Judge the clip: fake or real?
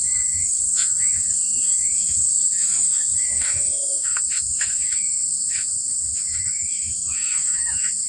fake